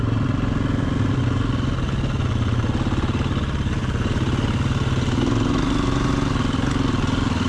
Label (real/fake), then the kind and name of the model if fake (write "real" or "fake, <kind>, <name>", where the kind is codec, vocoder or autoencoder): real